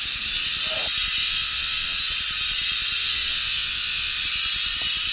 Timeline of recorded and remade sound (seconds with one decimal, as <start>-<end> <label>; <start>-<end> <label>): 0.0-1.2 recorded; 1.2-2.0 remade; 2.0-3.0 recorded; 3.0-4.2 remade; 4.2-5.1 recorded